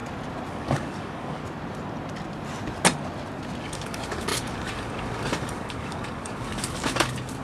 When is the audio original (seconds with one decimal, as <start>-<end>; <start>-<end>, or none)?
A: 0.0-0.5; 1.4-3.6